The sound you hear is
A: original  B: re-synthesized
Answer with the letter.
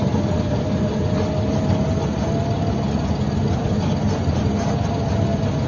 A